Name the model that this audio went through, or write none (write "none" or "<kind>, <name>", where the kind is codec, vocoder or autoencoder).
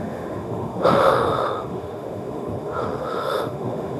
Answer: autoencoder, DAC-VAE